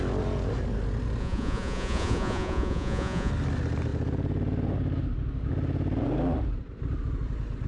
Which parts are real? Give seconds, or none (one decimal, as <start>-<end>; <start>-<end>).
0.0-1.2; 3.3-7.7